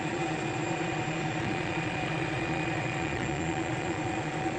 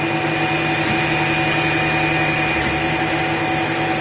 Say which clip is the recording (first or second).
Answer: second